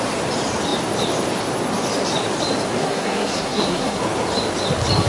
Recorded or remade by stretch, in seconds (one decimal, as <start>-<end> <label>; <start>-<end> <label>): 0.0-2.8 recorded; 2.8-4.0 remade; 4.0-5.1 recorded